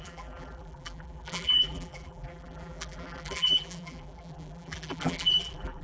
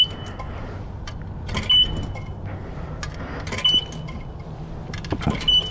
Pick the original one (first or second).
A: second